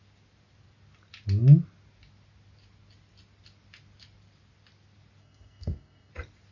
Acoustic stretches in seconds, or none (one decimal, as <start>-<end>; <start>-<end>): 0.0-5.2; 6.1-6.5